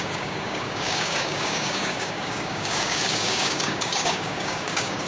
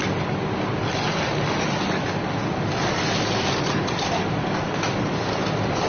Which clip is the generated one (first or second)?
first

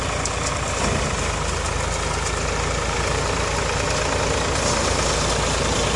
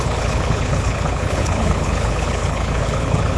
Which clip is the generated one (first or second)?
second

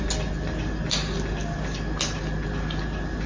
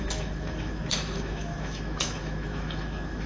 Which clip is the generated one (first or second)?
second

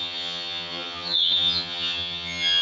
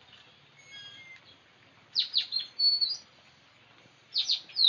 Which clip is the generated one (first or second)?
first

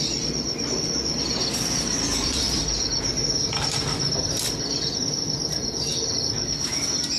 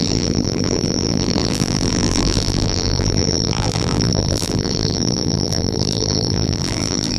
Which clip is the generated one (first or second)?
second